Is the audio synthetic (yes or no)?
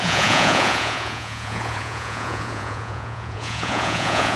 yes